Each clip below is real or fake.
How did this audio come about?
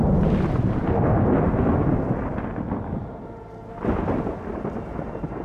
real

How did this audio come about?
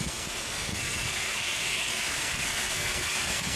fake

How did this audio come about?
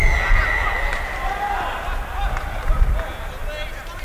real